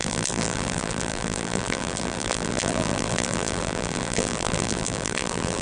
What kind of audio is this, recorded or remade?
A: remade